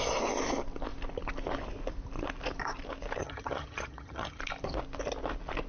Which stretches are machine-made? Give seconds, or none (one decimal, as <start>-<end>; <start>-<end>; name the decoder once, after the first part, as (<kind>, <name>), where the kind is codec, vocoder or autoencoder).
3.2-4.4 (vocoder, HiFi-GAN)